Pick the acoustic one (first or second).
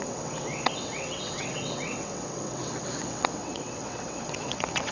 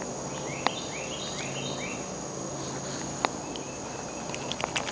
second